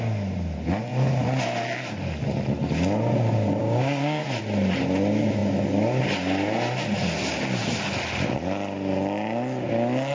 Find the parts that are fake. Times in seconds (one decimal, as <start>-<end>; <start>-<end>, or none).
3.6-4.2